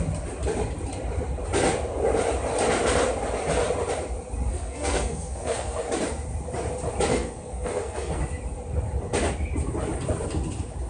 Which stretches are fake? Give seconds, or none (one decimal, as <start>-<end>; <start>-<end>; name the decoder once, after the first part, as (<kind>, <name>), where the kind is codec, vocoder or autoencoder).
4.5-5.9 (codec, SNAC); 7.1-8.2